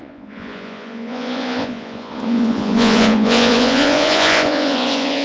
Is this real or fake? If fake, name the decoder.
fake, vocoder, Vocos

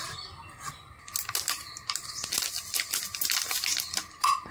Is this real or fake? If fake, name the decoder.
real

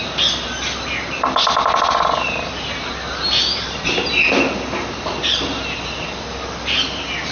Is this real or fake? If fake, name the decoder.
real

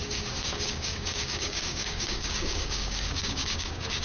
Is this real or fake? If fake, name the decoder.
fake, codec, DAC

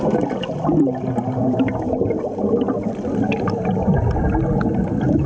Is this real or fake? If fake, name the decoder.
real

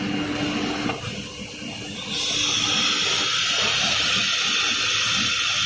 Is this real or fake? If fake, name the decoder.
real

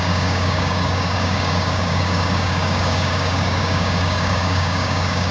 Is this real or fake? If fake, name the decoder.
fake, codec, DAC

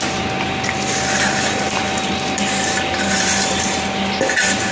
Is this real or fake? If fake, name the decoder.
real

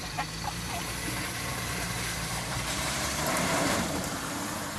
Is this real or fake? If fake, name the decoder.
fake, vocoder, BigVGAN v2